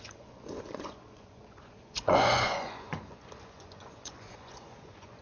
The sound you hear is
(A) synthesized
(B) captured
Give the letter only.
A